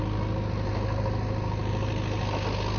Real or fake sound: real